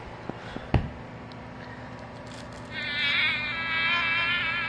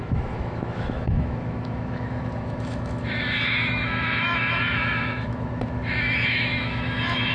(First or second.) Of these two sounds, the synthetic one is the second